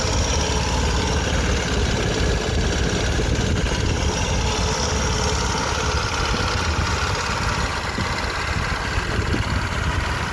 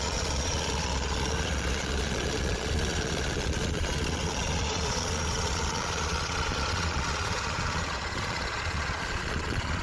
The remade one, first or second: second